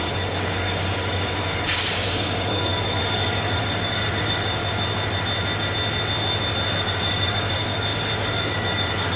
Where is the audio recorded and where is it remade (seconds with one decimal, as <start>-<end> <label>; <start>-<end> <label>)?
0.0-4.6 remade; 4.6-6.8 recorded; 6.8-9.2 remade